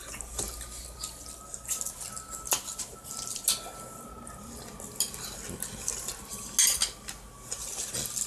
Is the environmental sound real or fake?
real